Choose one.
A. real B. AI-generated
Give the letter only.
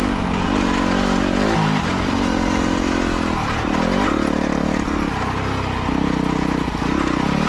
A